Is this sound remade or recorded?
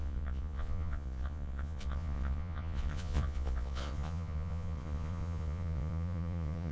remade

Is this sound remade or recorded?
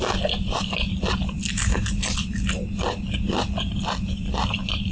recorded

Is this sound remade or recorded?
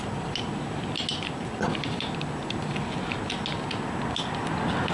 recorded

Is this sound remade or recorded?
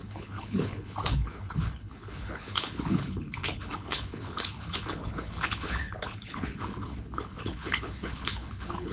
remade